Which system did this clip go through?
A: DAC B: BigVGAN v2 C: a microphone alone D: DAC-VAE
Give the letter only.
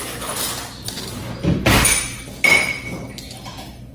C